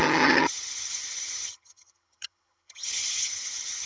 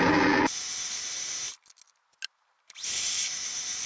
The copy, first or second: first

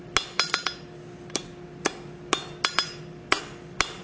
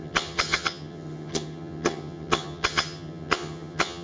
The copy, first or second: second